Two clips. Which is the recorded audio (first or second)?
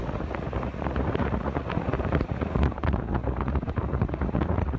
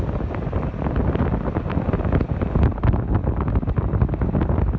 second